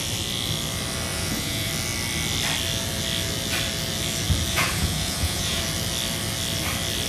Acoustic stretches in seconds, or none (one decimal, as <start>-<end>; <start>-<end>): 0.0-1.1; 1.7-4.5; 5.6-7.1